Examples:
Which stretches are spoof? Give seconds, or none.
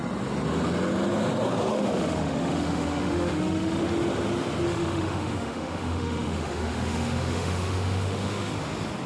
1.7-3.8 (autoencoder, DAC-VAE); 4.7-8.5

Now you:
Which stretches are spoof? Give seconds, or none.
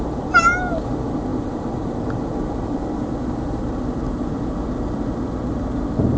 none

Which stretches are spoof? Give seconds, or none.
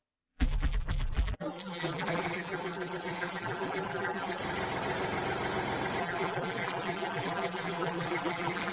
0.0-4.4 (vocoder, BigVGAN v2); 6.0-8.7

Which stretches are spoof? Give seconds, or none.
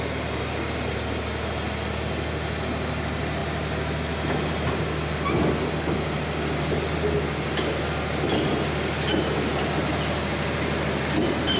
none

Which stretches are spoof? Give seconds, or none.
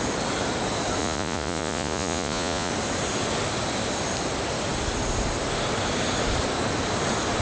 1.0-2.7 (vocoder, Vocos)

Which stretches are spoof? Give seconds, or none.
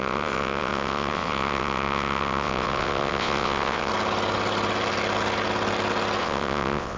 0.0-3.9 (vocoder, WaveNeXt); 6.2-7.0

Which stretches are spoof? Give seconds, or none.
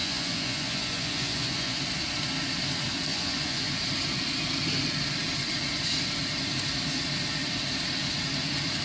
0.0-1.8 (vocoder, Vocos); 3.1-3.7